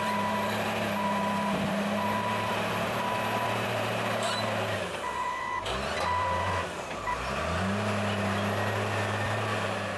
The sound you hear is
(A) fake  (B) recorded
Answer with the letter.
A